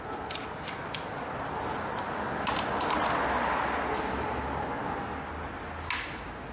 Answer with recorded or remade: recorded